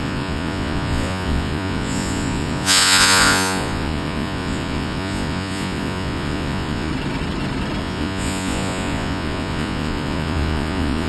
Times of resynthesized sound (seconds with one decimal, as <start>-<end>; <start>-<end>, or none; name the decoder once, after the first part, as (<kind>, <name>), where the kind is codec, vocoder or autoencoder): 0.0-6.9 (vocoder, Vocos); 7.8-11.1